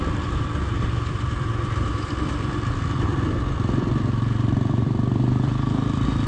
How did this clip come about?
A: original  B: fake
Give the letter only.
B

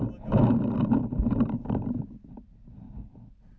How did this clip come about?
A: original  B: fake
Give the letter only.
A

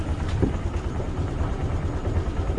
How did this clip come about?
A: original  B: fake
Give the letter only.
A